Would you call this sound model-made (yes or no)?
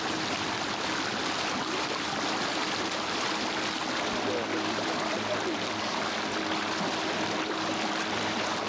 no